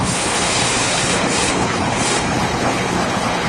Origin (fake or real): fake